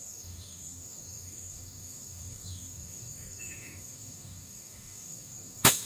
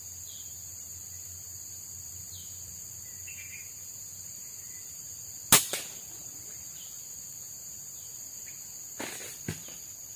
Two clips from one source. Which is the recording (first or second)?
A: second